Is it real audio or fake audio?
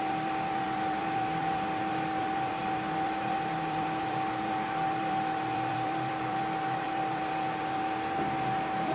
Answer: fake